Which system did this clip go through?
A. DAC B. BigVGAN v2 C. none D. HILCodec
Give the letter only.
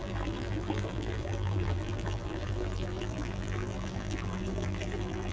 B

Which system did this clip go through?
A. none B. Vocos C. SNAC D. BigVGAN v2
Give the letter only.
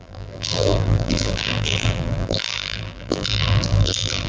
D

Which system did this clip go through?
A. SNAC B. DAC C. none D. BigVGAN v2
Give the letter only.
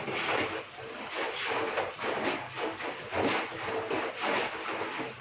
C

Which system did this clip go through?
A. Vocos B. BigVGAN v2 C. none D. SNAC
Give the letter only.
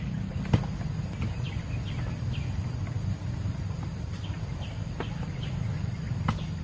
B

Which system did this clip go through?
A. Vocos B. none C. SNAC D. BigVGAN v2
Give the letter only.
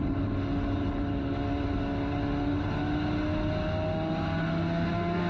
B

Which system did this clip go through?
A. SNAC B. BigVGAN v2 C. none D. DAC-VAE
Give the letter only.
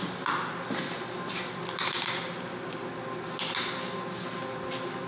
C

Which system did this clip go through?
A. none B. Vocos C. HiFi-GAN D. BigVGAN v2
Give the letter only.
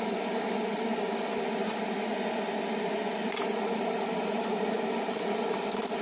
A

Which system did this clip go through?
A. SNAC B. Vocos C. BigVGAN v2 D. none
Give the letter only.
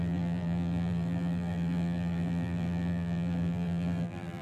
C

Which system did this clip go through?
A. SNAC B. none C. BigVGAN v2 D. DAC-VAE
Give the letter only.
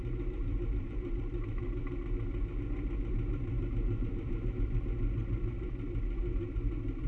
C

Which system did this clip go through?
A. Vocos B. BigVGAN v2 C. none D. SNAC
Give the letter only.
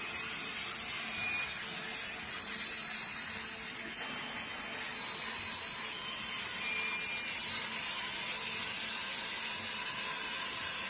C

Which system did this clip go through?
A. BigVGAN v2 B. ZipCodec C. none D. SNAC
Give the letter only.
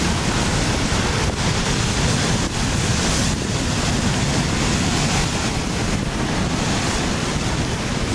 C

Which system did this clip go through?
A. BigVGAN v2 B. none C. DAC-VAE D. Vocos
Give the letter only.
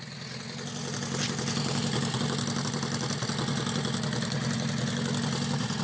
B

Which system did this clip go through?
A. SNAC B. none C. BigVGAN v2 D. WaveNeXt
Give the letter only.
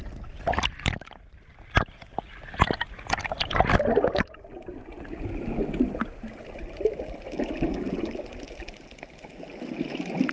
B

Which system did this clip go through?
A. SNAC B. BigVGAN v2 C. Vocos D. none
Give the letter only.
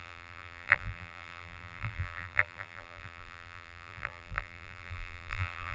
B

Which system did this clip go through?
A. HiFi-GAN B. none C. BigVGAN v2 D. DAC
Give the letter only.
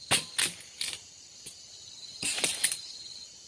C